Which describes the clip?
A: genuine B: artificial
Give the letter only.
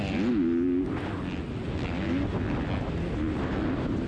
A